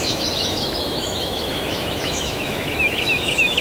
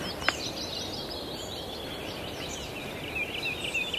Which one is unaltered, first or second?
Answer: second